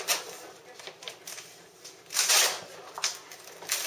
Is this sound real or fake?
real